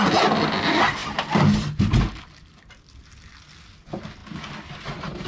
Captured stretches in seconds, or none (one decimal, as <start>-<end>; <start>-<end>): 0.0-5.3